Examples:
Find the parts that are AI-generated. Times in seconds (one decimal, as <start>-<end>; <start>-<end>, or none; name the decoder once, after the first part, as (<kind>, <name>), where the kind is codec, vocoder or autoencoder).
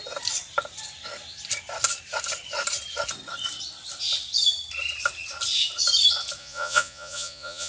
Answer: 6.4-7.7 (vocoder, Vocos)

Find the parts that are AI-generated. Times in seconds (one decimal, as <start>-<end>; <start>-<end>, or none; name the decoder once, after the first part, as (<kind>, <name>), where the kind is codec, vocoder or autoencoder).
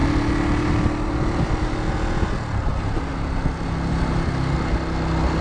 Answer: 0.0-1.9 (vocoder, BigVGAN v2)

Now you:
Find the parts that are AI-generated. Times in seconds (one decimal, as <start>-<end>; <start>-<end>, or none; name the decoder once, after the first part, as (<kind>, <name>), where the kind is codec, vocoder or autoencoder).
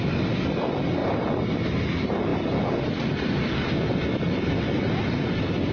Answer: 1.0-1.8 (vocoder, BigVGAN v2)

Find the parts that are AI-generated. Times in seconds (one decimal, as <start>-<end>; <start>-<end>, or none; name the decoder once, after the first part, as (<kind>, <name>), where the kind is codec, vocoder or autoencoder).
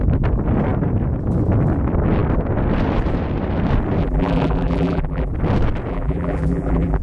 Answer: 4.0-5.3 (vocoder, BigVGAN v2); 5.9-7.0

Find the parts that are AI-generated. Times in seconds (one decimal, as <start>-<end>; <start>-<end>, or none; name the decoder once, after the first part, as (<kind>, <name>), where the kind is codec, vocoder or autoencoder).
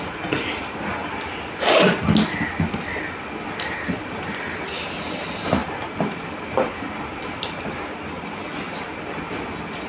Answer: none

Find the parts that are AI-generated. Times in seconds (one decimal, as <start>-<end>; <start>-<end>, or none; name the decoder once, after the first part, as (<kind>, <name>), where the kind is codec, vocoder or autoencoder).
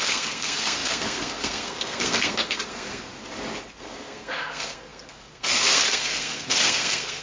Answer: 0.0-3.1 (codec, SNAC); 3.8-7.2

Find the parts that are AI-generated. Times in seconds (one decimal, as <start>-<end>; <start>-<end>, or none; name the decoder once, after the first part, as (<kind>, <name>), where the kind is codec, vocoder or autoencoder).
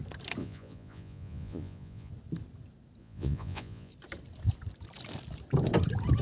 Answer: 0.4-2.1 (vocoder, Vocos); 3.0-3.9